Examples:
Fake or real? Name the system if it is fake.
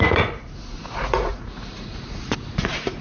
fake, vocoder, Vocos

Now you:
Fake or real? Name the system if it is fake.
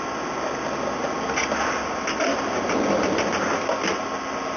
real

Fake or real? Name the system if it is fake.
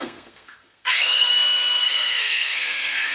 fake, codec, SNAC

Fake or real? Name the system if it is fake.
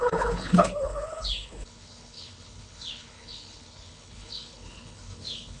fake, codec, HILCodec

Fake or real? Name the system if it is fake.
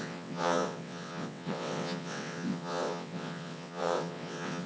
fake, vocoder, WaveNeXt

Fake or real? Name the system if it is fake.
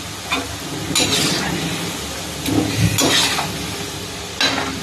real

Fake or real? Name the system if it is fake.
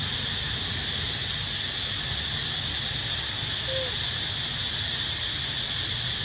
real